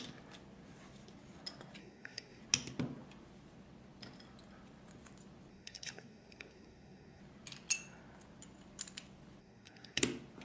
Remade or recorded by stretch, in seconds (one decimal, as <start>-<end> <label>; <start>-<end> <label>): 0.0-1.8 recorded; 1.8-2.4 remade; 2.4-5.5 recorded; 5.5-7.2 remade; 7.2-9.4 recorded; 9.4-10.0 remade; 10.0-10.4 recorded